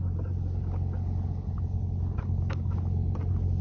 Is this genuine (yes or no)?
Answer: yes